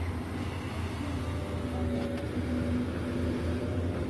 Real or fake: real